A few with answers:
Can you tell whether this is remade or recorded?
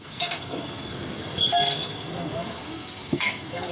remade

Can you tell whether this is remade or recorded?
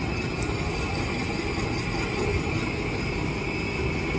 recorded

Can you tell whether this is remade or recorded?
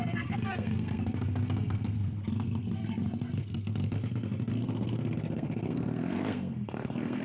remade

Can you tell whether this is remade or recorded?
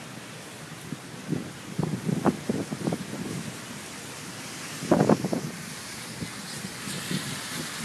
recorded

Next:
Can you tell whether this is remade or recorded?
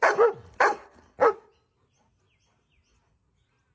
recorded